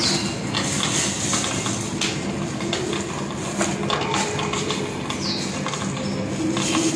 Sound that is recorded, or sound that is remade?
recorded